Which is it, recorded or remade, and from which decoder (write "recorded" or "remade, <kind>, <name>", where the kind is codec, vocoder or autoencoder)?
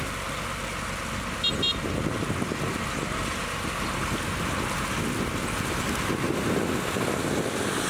recorded